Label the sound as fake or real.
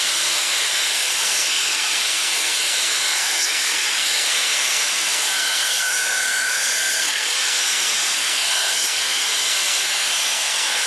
fake